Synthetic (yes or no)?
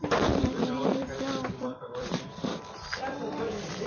yes